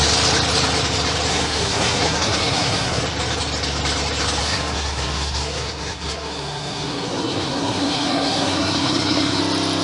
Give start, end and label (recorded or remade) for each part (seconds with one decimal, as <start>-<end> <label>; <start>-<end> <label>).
0.0-1.3 recorded; 1.3-3.0 remade; 3.0-4.4 recorded; 4.4-9.4 remade; 9.4-9.8 recorded